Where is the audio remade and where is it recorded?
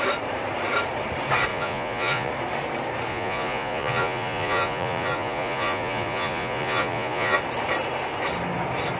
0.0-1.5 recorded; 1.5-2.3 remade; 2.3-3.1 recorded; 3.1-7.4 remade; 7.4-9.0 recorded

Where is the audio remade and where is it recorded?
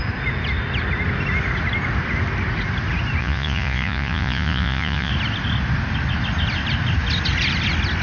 0.0-3.2 recorded; 3.2-5.1 remade; 5.1-8.0 recorded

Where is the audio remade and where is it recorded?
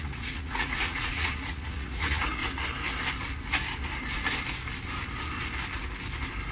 0.0-2.4 remade; 2.4-6.5 recorded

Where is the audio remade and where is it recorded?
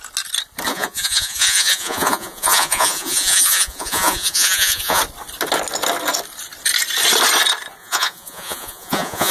0.0-0.7 recorded; 0.7-5.0 remade; 5.0-7.8 recorded; 7.8-9.3 remade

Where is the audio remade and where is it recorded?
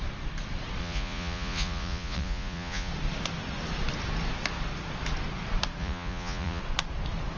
0.0-0.8 recorded; 0.8-2.9 remade; 2.9-5.8 recorded; 5.8-6.6 remade; 6.6-7.4 recorded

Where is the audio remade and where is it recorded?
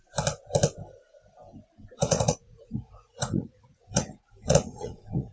0.0-1.8 recorded; 1.8-5.3 remade